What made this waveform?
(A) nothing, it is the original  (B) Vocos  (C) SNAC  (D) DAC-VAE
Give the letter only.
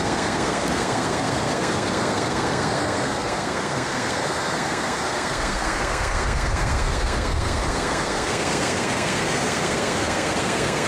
C